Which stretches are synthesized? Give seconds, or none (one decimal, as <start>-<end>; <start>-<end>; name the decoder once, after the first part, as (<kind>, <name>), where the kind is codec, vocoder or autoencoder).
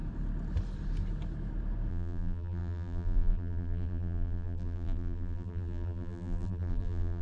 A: 1.9-7.2 (vocoder, BigVGAN v2)